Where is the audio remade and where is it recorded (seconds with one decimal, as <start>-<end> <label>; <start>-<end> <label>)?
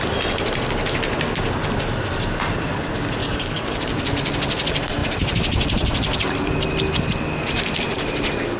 0.0-3.2 recorded; 3.2-3.8 remade; 3.8-8.6 recorded